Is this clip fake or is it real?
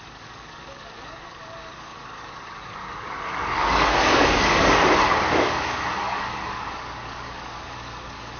fake